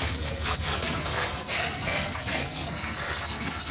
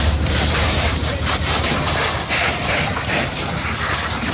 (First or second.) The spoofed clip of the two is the first